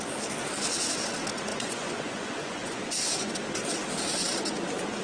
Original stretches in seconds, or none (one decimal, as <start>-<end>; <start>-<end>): 0.0-1.5; 3.3-5.0